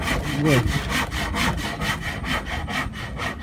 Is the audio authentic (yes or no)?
yes